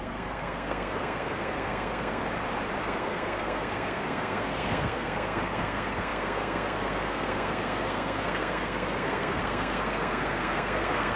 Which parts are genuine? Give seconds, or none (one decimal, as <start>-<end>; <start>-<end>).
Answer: 2.2-2.8